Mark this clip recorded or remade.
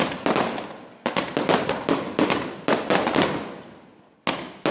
recorded